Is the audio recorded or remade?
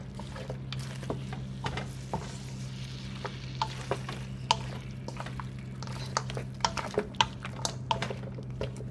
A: recorded